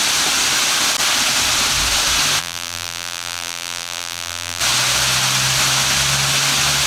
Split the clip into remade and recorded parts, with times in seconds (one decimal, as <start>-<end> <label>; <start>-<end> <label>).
0.0-2.4 recorded; 2.4-4.6 remade; 4.6-6.9 recorded